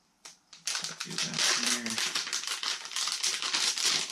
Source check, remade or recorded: recorded